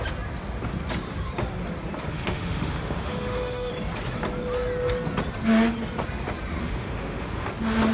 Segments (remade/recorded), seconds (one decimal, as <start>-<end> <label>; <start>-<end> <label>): 0.0-2.1 recorded; 2.1-3.7 remade; 3.7-6.6 recorded; 6.6-7.5 remade; 7.5-7.9 recorded